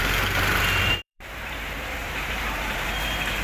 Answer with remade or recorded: remade